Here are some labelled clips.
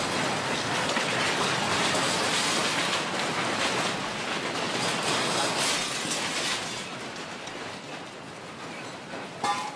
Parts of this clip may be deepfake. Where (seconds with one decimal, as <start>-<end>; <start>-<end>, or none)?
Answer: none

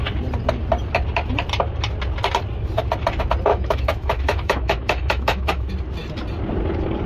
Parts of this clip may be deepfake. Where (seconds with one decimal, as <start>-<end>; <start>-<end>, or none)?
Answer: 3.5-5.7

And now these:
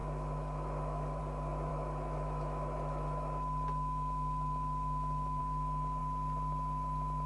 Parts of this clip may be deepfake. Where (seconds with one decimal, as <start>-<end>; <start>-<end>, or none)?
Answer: 0.0-1.2; 1.7-5.4

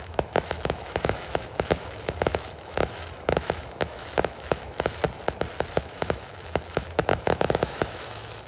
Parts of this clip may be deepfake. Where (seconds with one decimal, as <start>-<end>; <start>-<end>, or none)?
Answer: 0.0-5.0; 5.7-8.5

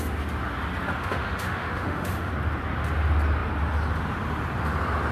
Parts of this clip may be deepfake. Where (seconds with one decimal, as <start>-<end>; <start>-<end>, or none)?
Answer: 1.0-2.3